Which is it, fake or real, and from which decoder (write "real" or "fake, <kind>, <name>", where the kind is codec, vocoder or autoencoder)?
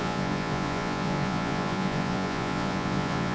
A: fake, vocoder, Vocos